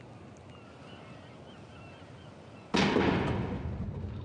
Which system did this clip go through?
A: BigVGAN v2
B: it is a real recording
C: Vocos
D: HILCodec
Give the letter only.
B